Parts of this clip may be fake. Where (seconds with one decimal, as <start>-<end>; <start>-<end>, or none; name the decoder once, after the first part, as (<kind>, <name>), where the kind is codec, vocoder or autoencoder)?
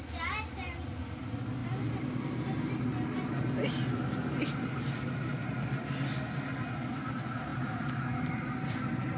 none